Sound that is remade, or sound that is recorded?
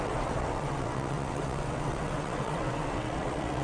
remade